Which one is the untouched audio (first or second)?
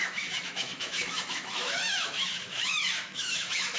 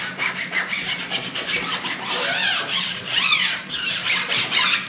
second